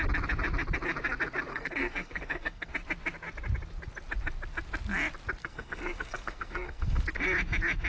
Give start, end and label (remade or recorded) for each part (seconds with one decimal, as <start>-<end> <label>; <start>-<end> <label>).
0.0-1.5 recorded; 1.5-2.7 remade; 2.7-5.4 recorded; 5.4-7.0 remade; 7.0-7.9 recorded